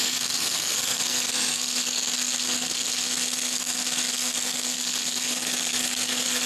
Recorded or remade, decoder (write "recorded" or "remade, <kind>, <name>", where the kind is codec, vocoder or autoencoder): remade, codec, SNAC